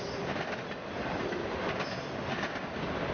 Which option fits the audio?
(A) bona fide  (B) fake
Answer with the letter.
A